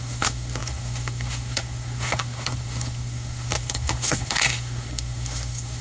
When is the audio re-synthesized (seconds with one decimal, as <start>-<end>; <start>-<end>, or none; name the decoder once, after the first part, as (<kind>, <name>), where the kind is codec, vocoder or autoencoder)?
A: 0.0-5.8 (codec, SNAC)